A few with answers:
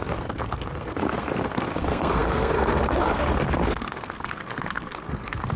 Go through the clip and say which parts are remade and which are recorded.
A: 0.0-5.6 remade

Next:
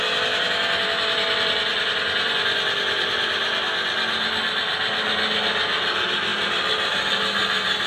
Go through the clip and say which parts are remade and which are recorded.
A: 0.0-7.9 recorded

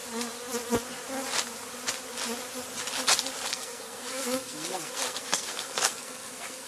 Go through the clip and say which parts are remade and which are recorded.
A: 0.0-3.5 recorded; 3.5-6.7 remade

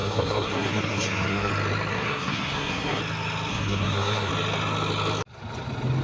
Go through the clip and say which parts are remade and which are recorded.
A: 0.0-1.5 remade; 1.5-1.9 recorded; 1.9-3.0 remade; 3.0-3.5 recorded; 3.5-4.3 remade; 4.3-6.0 recorded

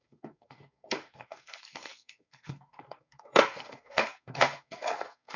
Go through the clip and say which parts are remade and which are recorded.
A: 0.0-5.4 remade